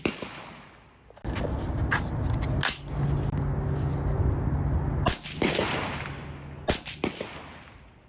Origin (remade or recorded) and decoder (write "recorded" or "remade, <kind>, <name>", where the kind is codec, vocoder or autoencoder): recorded